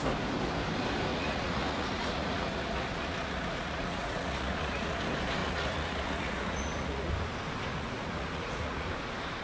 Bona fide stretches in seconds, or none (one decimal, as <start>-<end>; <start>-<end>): 0.0-1.1; 5.0-5.4; 7.1-7.7; 8.9-9.4